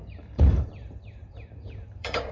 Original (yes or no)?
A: no